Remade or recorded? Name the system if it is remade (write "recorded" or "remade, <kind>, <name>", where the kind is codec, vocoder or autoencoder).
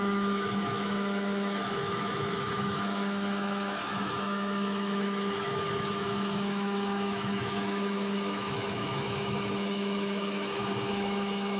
remade, autoencoder, DAC-VAE